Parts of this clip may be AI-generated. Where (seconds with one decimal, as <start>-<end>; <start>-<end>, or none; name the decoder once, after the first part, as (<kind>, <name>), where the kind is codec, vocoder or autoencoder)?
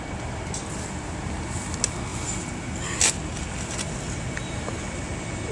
none